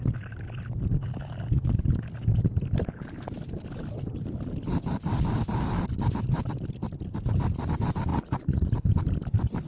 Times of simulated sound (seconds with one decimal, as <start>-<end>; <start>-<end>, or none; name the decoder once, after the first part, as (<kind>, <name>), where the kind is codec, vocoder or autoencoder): 8.1-8.7 (vocoder, Vocos)